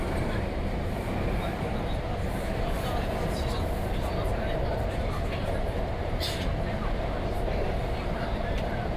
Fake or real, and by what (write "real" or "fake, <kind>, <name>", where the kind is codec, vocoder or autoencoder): fake, vocoder, BigVGAN v2